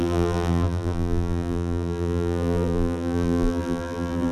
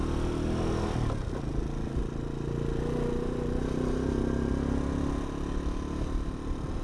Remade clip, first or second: first